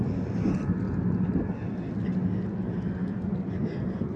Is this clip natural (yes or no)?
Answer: yes